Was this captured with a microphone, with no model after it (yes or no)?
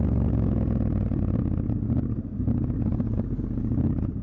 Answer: yes